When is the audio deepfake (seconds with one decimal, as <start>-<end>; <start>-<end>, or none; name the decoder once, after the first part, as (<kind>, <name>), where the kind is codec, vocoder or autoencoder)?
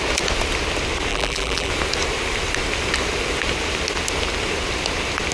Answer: 1.1-1.7 (vocoder, BigVGAN v2)